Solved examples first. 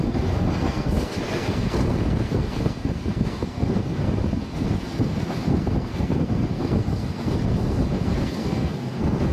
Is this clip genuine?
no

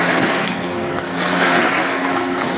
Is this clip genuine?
no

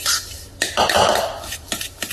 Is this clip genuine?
yes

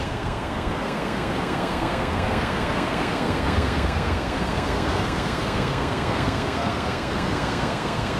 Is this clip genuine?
no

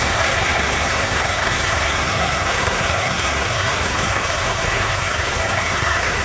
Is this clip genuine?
no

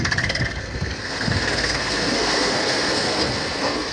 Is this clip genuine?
no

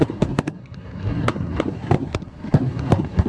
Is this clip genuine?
no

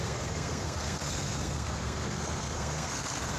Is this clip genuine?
no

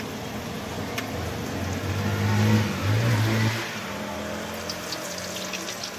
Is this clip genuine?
yes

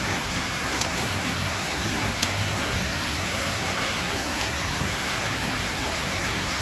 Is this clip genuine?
no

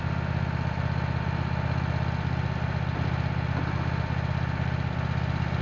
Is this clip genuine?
yes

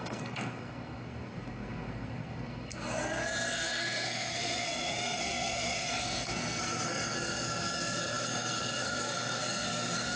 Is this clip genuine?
no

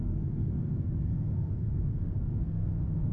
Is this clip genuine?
no